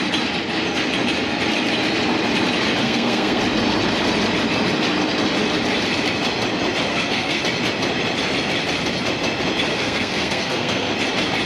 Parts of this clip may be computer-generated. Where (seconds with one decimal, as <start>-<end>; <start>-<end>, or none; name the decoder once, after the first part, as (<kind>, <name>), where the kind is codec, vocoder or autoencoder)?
2.8-3.4 (codec, SNAC); 6.9-7.4; 9.7-10.9